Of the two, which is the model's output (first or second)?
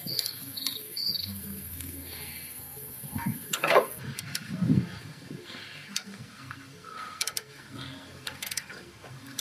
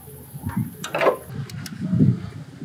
first